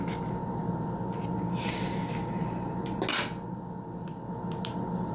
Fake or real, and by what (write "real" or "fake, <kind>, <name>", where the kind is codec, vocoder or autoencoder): real